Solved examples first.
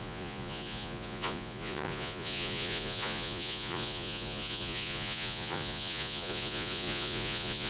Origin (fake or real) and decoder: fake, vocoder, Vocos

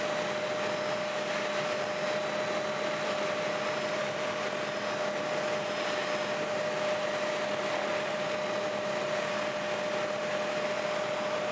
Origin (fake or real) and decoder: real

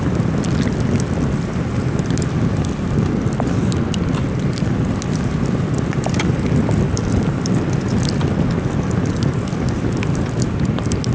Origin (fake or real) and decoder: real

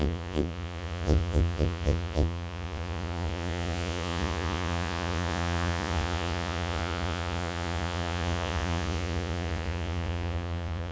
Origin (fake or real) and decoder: fake, vocoder, Vocos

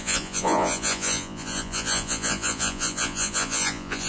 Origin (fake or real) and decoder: fake, vocoder, Vocos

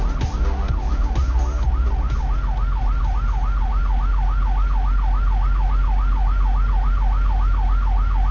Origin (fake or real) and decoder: real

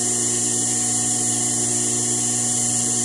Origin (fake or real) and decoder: real